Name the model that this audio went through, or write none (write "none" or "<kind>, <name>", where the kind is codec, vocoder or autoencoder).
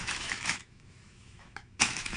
autoencoder, DAC-VAE